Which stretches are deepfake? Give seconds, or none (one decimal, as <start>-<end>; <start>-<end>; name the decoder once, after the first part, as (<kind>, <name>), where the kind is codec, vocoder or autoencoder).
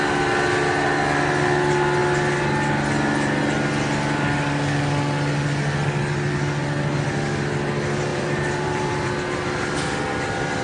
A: 8.1-9.1 (vocoder, BigVGAN v2)